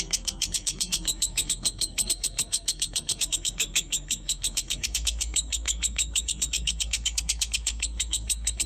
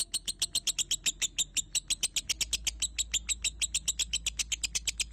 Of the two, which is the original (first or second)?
second